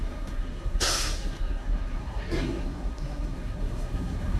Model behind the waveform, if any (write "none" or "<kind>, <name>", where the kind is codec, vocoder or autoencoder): codec, SNAC